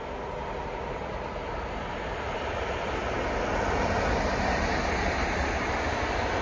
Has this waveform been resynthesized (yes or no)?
no